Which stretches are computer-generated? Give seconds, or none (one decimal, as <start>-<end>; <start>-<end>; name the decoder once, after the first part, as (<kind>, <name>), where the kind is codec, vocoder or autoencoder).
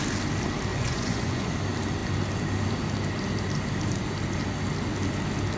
0.7-1.5 (vocoder, Vocos)